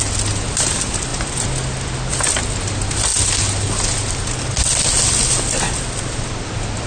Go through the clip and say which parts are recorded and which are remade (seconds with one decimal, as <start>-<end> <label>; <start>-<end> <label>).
0.0-6.9 recorded